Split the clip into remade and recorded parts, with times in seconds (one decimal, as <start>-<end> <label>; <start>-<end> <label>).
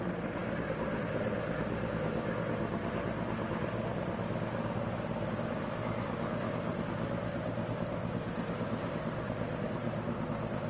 0.0-10.7 recorded